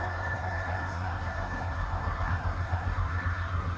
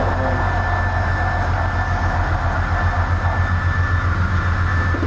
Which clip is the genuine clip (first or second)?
second